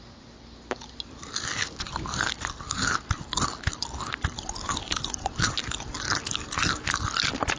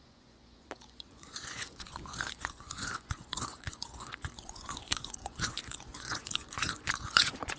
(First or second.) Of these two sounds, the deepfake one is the second